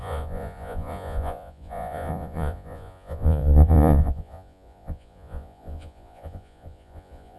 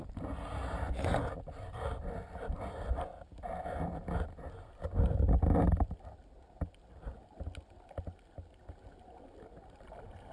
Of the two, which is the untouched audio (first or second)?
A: second